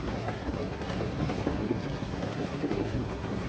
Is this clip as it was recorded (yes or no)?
no